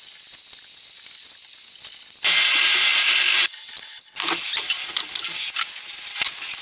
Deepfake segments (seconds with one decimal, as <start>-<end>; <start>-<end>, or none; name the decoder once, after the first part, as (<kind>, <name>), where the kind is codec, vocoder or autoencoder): none